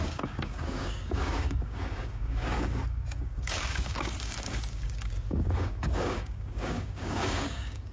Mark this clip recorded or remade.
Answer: remade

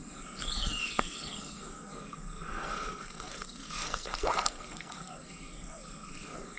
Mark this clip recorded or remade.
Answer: remade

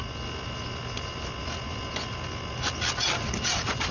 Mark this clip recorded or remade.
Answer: recorded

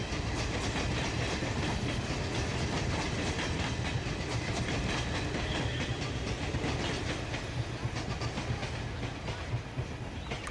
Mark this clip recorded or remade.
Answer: recorded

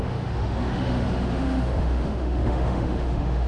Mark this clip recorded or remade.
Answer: remade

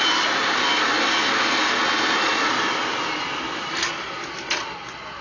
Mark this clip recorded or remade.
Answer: recorded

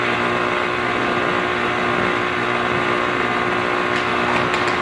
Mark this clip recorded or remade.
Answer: recorded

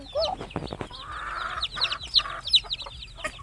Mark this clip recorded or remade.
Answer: recorded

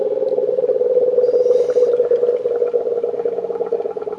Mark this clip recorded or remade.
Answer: recorded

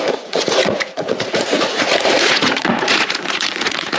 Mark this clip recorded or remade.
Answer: remade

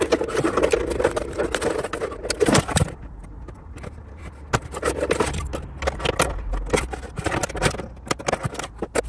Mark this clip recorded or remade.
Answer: recorded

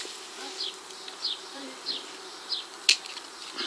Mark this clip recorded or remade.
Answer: recorded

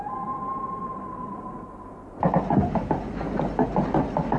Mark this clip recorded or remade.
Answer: recorded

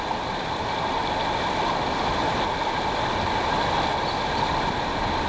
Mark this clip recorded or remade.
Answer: recorded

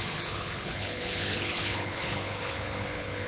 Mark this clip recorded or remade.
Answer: remade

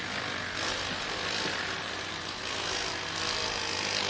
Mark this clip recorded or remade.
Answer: recorded